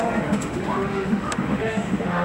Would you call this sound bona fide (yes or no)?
no